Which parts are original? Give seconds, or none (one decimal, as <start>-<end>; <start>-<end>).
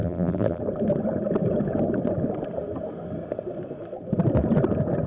0.6-5.1